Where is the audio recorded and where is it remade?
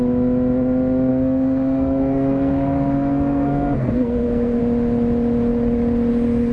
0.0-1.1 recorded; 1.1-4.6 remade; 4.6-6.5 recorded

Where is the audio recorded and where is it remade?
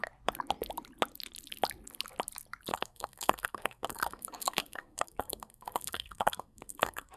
0.0-2.7 recorded; 2.7-7.2 remade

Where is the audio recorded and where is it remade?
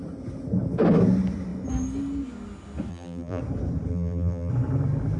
0.0-2.9 recorded; 2.9-3.4 remade; 3.4-3.9 recorded; 3.9-4.5 remade; 4.5-5.2 recorded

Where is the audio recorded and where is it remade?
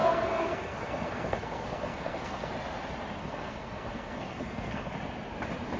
0.0-2.5 remade; 2.5-3.2 recorded; 3.2-4.9 remade; 4.9-5.8 recorded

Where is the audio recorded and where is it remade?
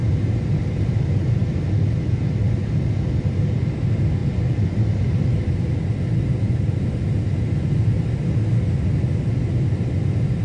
0.0-10.4 recorded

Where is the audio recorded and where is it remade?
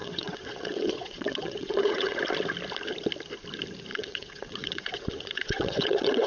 0.0-2.2 remade; 2.2-3.9 recorded; 3.9-6.3 remade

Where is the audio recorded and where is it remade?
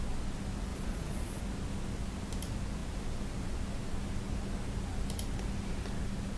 0.0-0.7 recorded; 0.7-1.4 remade; 1.4-6.4 recorded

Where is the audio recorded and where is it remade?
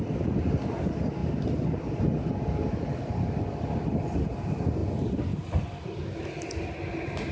0.0-7.3 recorded